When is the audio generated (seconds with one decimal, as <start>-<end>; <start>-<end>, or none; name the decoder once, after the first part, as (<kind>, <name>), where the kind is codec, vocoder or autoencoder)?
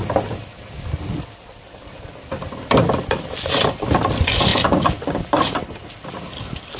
none